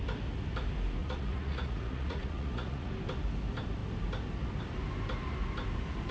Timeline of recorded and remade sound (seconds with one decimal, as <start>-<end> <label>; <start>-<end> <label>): 0.0-1.0 recorded; 1.0-2.9 remade; 2.9-6.1 recorded